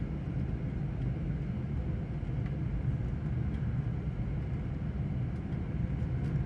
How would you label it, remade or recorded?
recorded